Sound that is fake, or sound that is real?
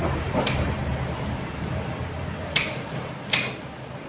real